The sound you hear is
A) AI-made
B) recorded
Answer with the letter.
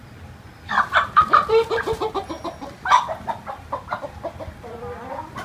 B